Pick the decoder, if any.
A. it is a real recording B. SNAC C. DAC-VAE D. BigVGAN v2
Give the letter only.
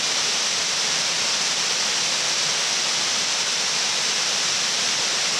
A